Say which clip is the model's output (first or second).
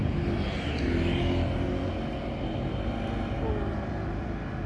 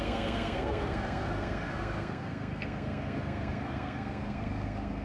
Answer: second